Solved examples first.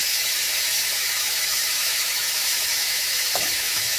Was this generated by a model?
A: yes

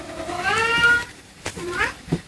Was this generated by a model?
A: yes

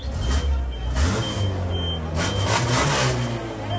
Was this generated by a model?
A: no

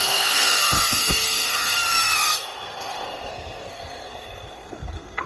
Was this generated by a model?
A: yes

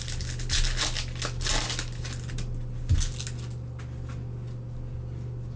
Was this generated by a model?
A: no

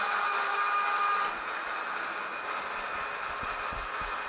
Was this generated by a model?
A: no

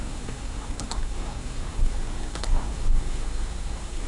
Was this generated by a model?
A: yes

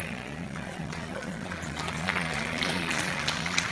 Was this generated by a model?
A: yes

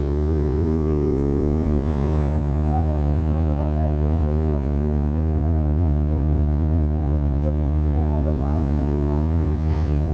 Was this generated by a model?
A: yes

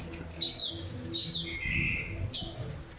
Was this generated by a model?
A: no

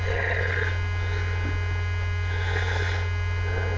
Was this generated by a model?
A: no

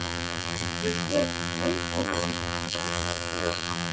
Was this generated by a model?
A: yes